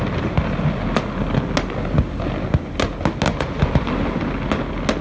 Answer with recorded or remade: recorded